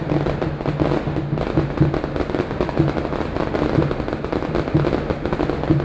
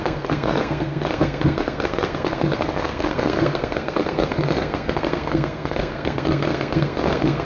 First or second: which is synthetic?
second